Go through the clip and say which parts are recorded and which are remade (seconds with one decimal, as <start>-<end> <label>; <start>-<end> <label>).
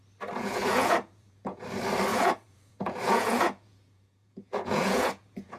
0.0-0.4 recorded; 0.4-1.6 remade; 1.6-2.1 recorded; 2.1-5.6 remade